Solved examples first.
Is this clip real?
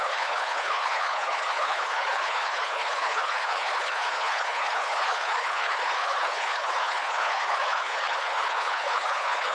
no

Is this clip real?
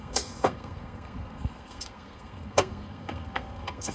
no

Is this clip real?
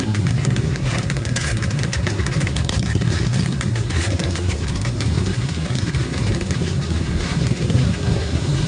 no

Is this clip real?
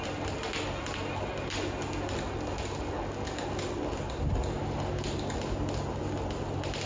yes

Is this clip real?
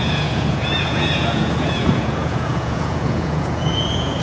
no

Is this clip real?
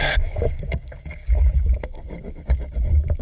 no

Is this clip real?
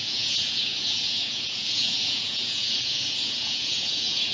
no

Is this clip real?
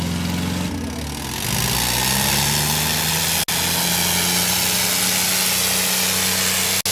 yes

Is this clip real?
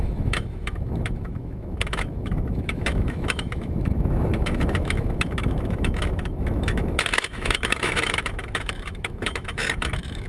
no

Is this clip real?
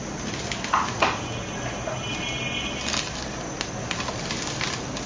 yes